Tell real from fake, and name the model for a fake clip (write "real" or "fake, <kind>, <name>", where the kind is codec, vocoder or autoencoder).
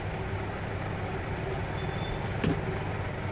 real